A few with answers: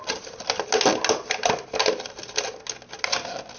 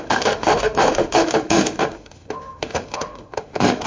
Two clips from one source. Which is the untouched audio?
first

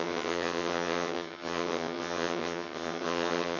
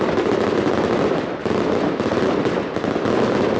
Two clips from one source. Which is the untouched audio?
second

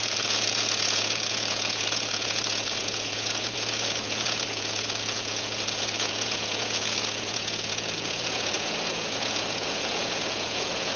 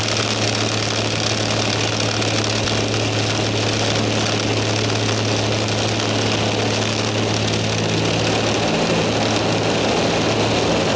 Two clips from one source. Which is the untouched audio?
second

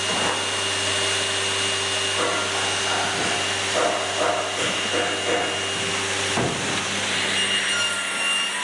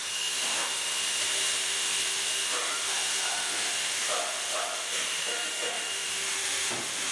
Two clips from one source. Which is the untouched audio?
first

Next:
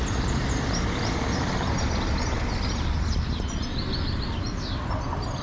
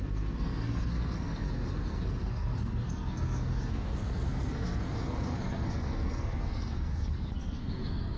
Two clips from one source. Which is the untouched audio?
first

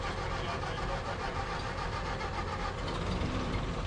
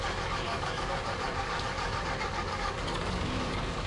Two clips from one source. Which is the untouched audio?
first